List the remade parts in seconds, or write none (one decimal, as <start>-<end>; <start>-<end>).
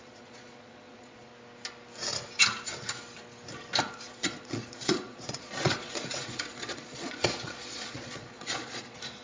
0.0-1.3; 3.8-9.2